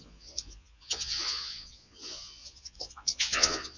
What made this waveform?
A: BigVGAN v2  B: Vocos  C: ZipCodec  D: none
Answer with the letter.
B